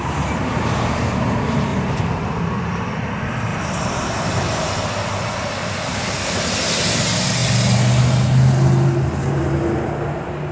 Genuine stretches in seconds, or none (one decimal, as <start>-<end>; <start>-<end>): 0.0-1.7; 3.0-3.5; 4.8-5.9; 6.5-10.5